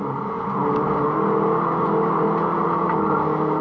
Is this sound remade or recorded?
recorded